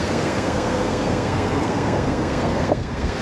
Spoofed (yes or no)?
yes